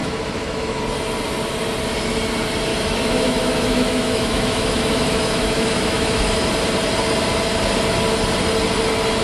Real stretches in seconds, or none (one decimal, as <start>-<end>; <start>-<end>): 0.8-2.7; 6.5-9.2